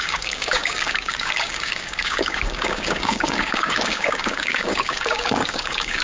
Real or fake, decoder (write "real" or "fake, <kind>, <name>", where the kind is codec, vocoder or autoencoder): fake, codec, DAC